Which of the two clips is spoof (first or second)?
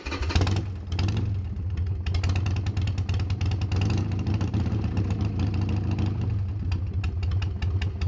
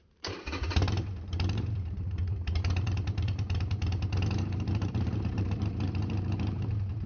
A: second